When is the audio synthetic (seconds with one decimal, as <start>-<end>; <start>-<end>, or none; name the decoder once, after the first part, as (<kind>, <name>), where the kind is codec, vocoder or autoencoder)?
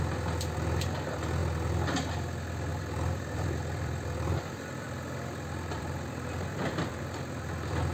2.7-7.0 (vocoder, BigVGAN v2)